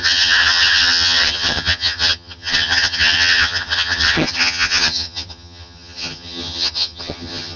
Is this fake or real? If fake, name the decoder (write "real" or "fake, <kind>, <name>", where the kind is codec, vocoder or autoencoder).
fake, vocoder, HiFi-GAN